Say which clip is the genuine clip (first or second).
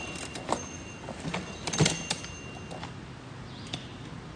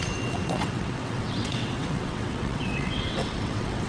first